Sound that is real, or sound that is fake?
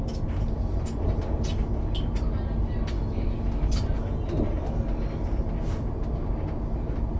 real